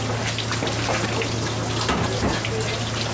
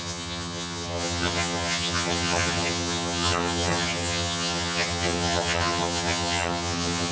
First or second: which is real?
first